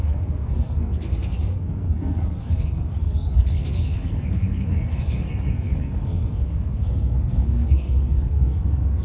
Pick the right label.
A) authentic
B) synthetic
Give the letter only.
B